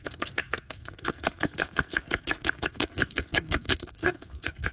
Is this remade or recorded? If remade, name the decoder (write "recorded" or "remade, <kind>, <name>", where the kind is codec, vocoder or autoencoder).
remade, codec, SNAC